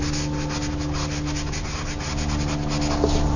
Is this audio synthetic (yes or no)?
no